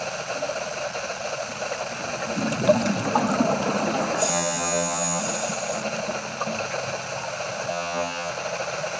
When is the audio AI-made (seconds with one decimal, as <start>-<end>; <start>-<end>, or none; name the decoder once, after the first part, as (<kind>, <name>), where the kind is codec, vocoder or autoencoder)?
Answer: 4.3-5.2 (vocoder, HiFi-GAN); 7.7-8.3